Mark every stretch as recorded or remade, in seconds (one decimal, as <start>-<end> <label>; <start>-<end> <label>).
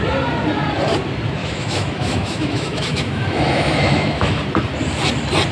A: 0.0-1.4 recorded; 1.4-4.4 remade; 4.4-5.5 recorded